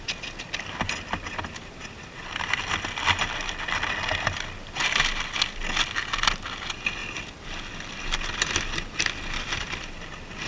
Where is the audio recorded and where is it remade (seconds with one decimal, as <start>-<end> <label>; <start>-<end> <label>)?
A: 0.0-10.5 recorded